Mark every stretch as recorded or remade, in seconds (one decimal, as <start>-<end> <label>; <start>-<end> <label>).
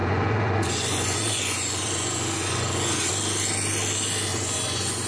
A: 0.0-3.1 remade; 3.1-4.3 recorded; 4.3-5.1 remade